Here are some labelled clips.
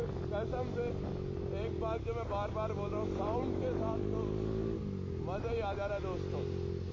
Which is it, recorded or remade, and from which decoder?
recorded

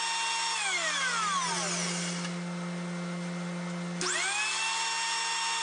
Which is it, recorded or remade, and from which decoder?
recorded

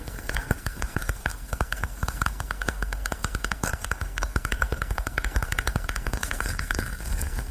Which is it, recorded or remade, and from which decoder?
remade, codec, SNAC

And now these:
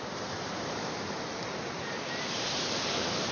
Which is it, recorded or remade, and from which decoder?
remade, vocoder, BigVGAN v2